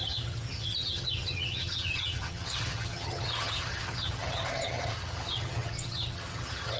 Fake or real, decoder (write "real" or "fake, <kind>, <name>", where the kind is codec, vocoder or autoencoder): fake, vocoder, HiFi-GAN